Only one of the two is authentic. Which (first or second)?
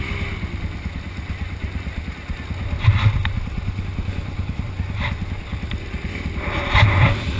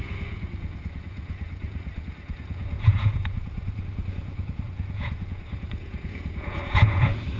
first